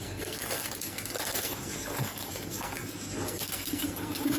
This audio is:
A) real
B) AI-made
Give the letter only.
B